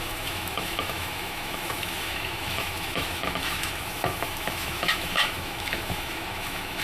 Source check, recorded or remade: remade